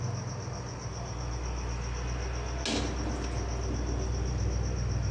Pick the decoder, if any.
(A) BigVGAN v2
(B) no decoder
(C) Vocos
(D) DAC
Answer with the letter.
B